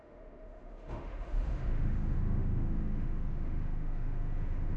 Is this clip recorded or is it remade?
remade